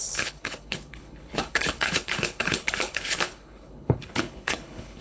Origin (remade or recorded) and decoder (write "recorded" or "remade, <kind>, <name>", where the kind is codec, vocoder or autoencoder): remade, codec, HILCodec